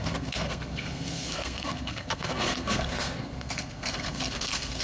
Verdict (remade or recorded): remade